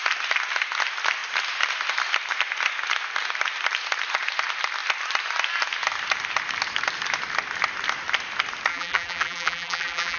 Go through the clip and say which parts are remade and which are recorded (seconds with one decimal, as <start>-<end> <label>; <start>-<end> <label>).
0.0-8.7 recorded; 8.7-10.2 remade